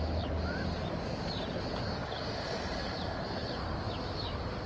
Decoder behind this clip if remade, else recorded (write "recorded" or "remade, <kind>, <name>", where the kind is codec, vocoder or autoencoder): recorded